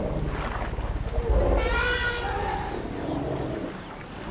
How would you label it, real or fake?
real